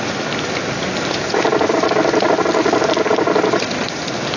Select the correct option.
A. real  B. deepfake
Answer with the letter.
A